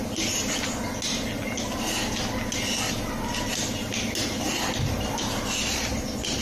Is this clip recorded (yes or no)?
yes